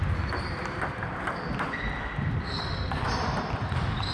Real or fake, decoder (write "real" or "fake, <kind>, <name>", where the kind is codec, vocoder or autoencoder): real